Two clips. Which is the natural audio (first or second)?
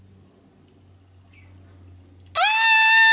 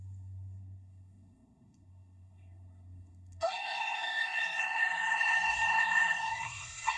first